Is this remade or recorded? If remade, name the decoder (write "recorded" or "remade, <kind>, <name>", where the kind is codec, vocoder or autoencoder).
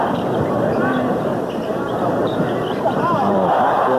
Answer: remade, vocoder, BigVGAN v2